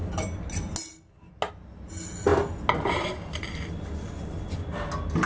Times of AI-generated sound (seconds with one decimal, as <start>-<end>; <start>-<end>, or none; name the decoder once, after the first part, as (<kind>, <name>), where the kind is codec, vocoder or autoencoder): none